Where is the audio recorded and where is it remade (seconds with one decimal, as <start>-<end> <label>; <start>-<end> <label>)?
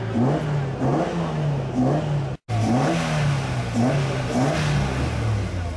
0.0-5.8 recorded